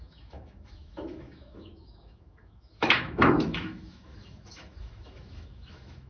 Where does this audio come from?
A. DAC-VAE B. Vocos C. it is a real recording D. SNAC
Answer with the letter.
A